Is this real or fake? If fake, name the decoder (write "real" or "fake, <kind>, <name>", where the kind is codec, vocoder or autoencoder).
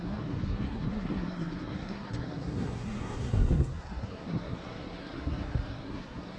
fake, codec, SNAC